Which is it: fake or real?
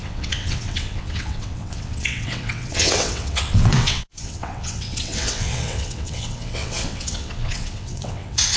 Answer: fake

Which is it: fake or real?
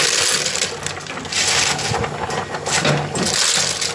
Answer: real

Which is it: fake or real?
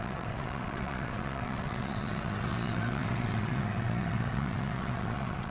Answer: fake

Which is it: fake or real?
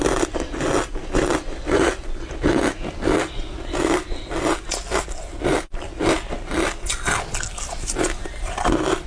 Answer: real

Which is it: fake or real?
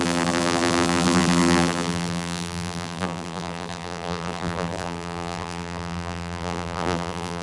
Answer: fake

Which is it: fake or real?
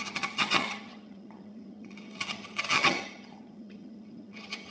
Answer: fake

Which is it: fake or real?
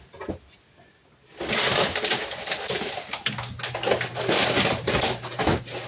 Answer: real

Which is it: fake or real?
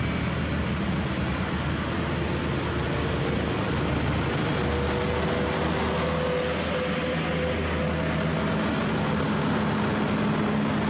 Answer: real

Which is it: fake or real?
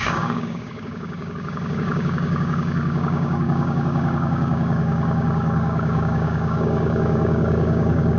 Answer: fake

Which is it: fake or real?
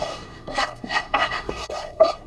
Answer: fake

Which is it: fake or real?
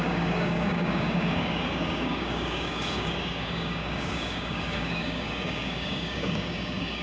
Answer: fake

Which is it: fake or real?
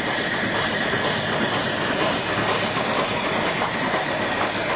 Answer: real